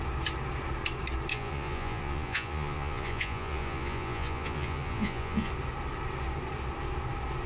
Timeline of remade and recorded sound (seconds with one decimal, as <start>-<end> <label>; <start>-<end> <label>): 0.0-1.3 recorded; 1.3-5.5 remade; 5.5-7.5 recorded